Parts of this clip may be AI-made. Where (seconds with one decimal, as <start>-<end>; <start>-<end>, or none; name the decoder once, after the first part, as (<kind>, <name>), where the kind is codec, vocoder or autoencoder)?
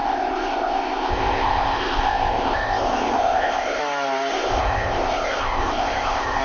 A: 0.0-3.8 (codec, ZipCodec); 4.3-6.4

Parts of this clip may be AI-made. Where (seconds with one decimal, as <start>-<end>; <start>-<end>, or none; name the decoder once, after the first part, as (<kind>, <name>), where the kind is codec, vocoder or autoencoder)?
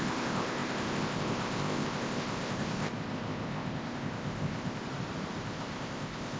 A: 0.0-4.8 (codec, ZipCodec); 5.4-6.4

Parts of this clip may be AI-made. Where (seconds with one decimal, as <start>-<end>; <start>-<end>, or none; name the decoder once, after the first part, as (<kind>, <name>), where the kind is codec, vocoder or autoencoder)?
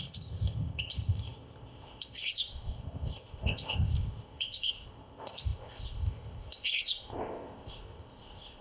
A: 0.0-8.6 (codec, ZipCodec)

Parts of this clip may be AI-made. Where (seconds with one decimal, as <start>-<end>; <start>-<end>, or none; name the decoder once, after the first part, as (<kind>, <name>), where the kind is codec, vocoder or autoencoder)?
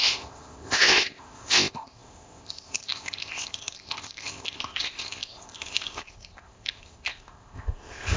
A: 0.0-8.2 (codec, ZipCodec)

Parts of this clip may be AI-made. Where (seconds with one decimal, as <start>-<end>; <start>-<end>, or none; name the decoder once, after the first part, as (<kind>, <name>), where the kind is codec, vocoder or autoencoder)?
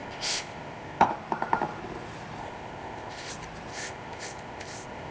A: 0.0-1.1 (codec, ZipCodec); 2.4-3.3; 3.7-5.1